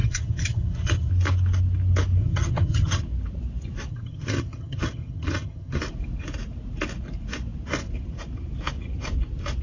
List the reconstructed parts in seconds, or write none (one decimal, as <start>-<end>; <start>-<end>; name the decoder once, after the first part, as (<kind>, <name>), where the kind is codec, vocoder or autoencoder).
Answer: 0.0-1.1 (vocoder, HiFi-GAN); 2.2-3.0; 3.9-5.8